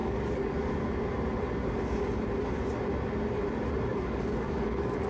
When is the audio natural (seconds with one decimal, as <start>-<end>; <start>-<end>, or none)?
0.7-3.9